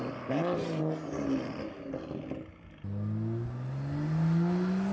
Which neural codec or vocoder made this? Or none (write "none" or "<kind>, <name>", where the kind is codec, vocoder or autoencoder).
none